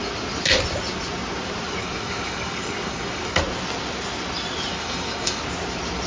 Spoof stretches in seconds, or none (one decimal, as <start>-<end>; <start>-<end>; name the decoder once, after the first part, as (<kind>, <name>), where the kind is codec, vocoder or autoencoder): 1.8-3.4 (codec, DAC); 4.7-5.4